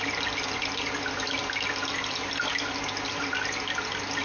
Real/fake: real